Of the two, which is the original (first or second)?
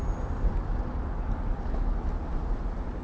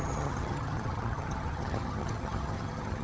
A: first